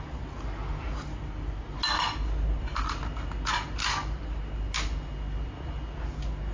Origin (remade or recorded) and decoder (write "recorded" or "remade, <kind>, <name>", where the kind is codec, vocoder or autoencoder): recorded